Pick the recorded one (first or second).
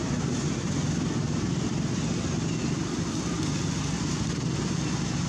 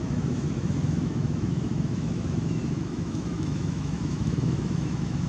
first